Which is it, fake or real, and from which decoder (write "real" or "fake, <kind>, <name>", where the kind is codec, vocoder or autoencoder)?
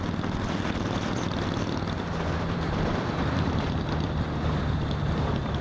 fake, vocoder, BigVGAN v2